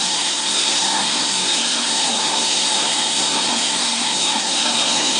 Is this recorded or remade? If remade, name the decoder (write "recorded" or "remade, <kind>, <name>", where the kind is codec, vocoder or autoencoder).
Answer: remade, codec, SNAC